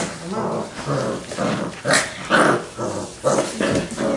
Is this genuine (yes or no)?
yes